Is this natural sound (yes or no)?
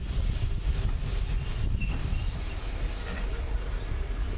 yes